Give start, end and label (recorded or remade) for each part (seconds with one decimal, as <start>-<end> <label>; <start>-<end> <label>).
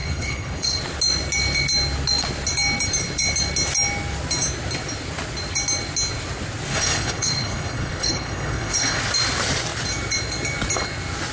0.0-0.8 remade; 0.8-6.7 recorded; 6.7-9.0 remade; 9.0-11.3 recorded